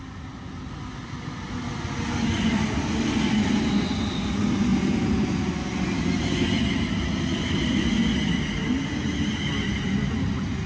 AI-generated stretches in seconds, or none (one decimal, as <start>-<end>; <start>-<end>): none